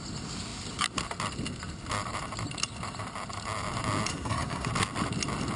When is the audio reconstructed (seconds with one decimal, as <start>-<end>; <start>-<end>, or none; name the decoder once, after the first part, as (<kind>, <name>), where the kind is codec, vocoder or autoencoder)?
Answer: 4.1-4.7 (codec, SNAC)